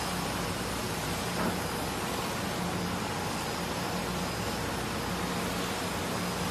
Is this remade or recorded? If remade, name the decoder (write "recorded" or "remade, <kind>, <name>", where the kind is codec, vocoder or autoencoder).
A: recorded